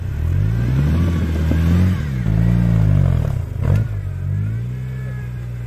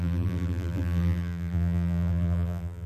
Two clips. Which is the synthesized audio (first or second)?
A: second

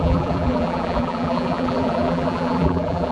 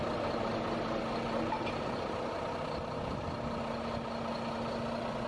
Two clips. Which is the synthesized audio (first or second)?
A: first